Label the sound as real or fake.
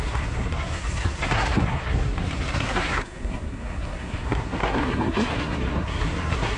fake